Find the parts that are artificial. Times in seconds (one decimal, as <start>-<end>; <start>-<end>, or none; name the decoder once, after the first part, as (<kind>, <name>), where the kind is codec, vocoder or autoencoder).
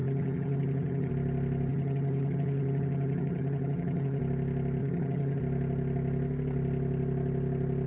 0.0-1.1 (vocoder, HiFi-GAN); 1.7-4.2; 4.8-5.4